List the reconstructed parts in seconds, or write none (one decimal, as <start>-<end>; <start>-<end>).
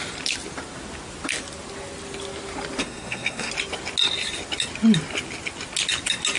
2.8-3.5